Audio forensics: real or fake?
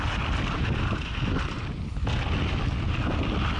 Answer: real